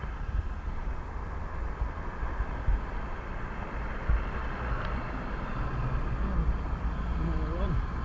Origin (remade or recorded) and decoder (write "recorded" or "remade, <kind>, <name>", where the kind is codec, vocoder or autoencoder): recorded